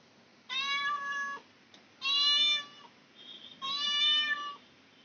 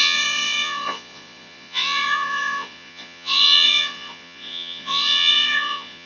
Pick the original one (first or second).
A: first